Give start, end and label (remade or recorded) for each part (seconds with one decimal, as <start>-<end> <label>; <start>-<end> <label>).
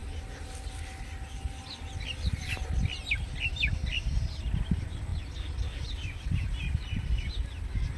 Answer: 0.0-5.1 recorded; 5.1-7.3 remade; 7.3-8.0 recorded